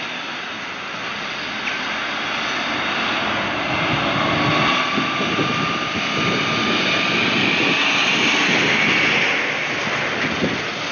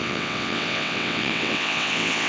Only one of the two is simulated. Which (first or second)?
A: second